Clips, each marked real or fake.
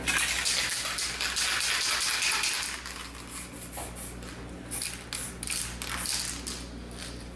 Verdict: real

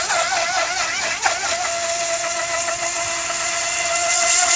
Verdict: real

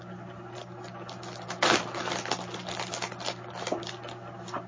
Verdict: real